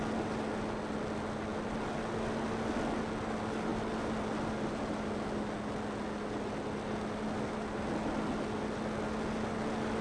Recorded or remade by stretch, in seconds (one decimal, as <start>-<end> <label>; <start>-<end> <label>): 0.0-10.0 recorded